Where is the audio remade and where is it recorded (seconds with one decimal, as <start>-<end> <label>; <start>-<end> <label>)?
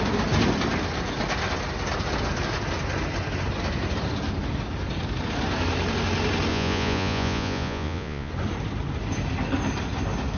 0.0-6.5 recorded; 6.5-8.3 remade; 8.3-10.4 recorded